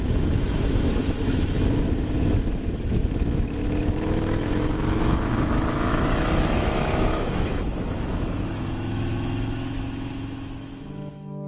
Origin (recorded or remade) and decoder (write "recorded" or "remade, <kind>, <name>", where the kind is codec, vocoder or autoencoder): remade, autoencoder, DAC-VAE